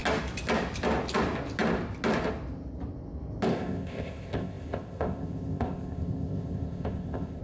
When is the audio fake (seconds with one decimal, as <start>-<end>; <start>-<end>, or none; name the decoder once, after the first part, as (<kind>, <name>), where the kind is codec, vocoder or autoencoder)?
3.5-7.4 (codec, ZipCodec)